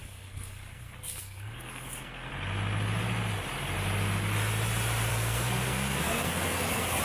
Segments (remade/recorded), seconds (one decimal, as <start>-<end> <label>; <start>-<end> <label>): 0.0-2.3 remade; 2.3-5.1 recorded; 5.1-7.0 remade